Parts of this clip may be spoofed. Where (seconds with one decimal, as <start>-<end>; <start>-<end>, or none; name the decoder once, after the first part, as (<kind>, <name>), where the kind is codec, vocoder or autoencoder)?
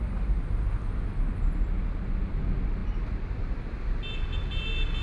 none